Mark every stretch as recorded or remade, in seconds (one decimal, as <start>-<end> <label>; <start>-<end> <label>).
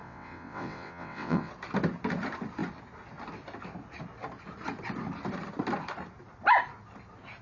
0.0-1.5 remade; 1.5-7.4 recorded